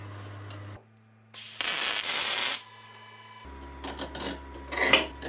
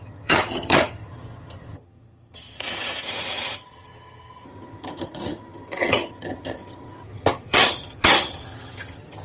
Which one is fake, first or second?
second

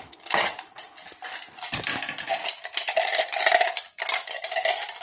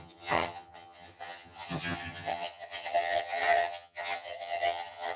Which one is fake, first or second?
second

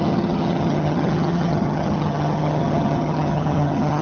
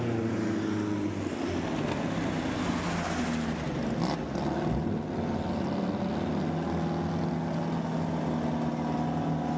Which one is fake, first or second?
first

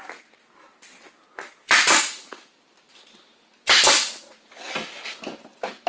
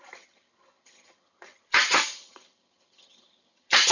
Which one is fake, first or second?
second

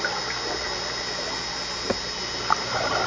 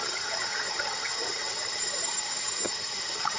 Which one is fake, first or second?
second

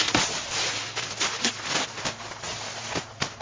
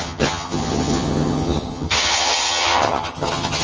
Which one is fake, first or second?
second